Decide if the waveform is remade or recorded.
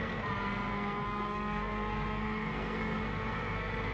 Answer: remade